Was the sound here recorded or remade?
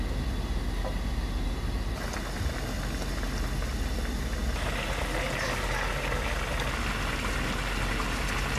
recorded